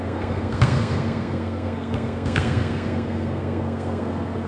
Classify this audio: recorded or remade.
remade